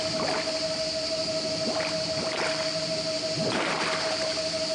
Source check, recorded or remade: recorded